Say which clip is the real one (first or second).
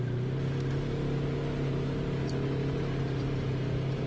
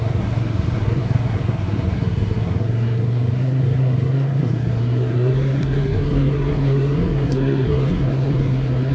first